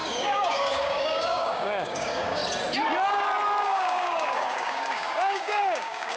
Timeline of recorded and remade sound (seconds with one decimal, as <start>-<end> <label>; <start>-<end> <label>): 0.0-2.4 remade; 2.4-3.6 recorded; 3.6-6.2 remade